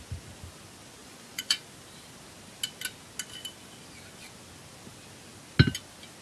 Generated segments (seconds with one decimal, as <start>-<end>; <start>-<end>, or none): 1.0-1.6